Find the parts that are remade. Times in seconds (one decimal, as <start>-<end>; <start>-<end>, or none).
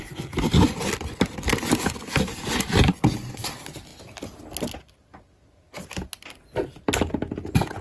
none